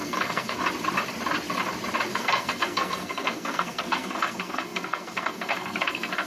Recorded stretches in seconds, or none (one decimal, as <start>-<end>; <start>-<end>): 0.6-2.1